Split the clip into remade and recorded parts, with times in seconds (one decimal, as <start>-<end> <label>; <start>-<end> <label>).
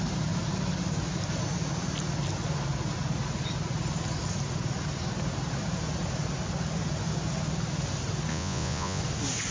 0.0-8.3 recorded; 8.3-9.0 remade; 9.0-9.5 recorded